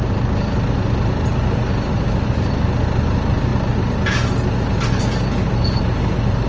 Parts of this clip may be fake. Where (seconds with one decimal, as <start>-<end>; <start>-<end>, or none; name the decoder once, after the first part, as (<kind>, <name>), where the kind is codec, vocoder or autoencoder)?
none